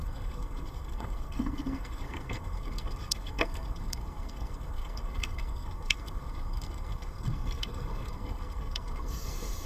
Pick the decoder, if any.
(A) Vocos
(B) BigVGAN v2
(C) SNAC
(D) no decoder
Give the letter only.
C